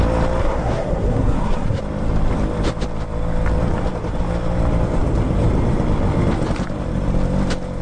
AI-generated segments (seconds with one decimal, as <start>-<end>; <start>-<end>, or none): 0.4-1.8